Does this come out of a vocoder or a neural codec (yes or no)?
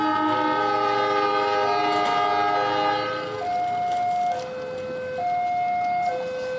no